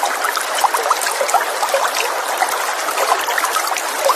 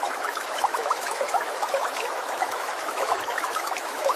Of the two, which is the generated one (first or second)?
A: second